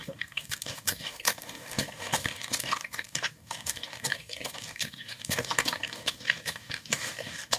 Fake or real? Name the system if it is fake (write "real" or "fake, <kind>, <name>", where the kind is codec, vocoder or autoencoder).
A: fake, codec, DAC